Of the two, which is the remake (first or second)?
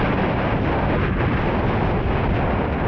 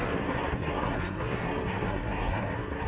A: second